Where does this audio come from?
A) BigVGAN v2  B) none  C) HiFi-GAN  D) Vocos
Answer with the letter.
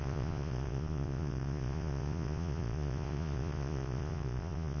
D